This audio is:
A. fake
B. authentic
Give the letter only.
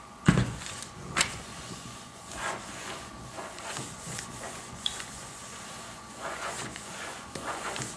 A